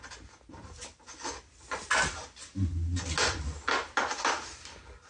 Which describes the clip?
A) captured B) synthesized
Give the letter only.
A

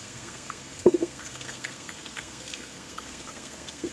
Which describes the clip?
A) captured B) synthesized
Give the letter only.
B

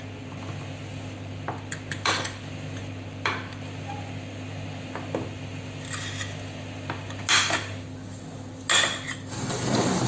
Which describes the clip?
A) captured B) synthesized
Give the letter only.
A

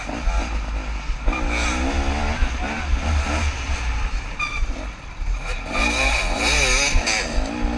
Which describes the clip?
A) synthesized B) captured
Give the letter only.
B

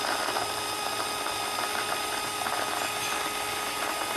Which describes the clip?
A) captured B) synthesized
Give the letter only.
A